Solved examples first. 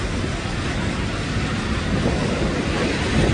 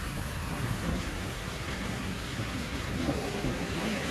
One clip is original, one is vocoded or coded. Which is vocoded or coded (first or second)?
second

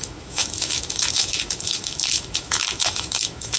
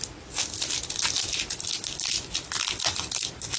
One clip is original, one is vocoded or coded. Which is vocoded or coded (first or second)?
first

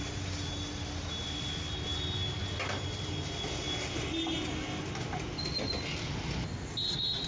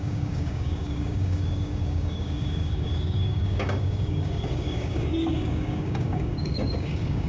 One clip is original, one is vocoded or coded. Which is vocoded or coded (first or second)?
second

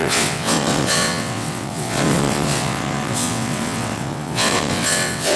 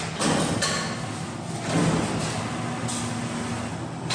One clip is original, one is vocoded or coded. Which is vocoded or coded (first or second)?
first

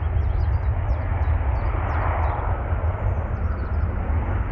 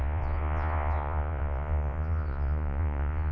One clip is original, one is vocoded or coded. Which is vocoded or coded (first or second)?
second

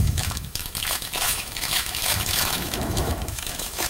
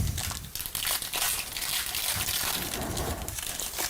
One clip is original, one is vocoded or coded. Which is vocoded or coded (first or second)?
first